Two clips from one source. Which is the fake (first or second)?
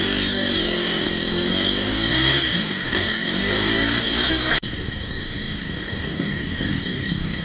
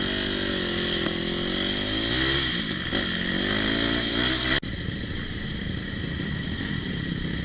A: first